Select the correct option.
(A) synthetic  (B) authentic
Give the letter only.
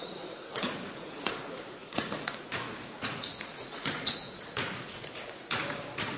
A